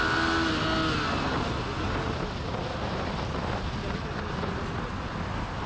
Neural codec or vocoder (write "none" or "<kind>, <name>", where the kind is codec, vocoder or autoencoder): none